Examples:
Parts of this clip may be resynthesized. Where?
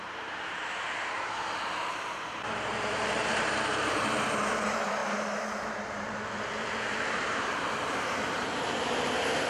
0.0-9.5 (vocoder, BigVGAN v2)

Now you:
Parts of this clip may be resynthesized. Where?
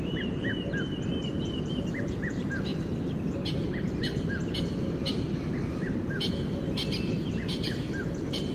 0.0-0.5 (vocoder, BigVGAN v2); 1.6-2.7; 5.1-6.0; 7.1-8.5